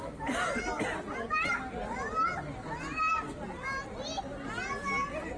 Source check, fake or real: real